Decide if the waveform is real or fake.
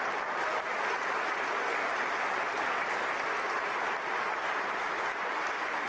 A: real